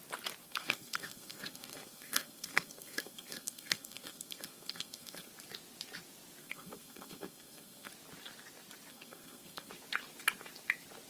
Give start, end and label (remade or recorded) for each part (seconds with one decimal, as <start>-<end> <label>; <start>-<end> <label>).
0.0-0.4 recorded; 0.4-5.3 remade; 5.3-6.4 recorded; 6.4-7.9 remade; 7.9-8.9 recorded; 8.9-9.7 remade; 9.7-11.1 recorded